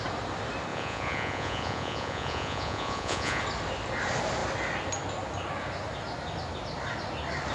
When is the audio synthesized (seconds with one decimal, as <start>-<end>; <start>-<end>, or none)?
0.7-3.4

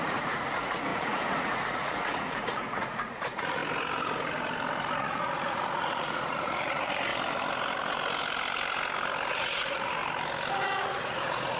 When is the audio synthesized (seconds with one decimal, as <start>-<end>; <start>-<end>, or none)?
0.0-3.6; 5.0-7.1; 9.3-10.0; 10.5-11.6